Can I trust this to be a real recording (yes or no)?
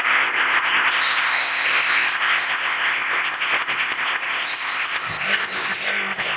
no